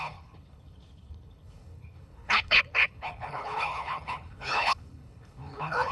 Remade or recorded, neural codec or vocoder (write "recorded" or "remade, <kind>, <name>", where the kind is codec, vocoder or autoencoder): remade, codec, HILCodec